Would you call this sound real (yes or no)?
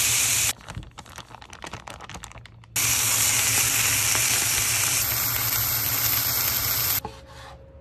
yes